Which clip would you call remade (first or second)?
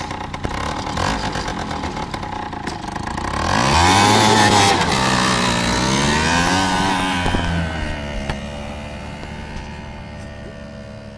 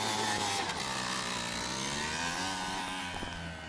second